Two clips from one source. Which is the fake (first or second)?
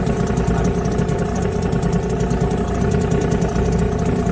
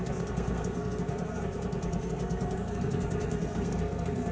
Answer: second